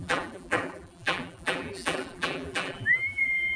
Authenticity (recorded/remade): remade